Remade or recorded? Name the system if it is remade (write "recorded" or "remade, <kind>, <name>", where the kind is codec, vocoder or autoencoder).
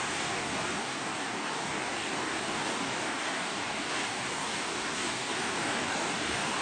remade, codec, DAC